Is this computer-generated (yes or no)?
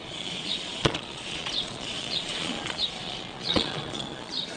yes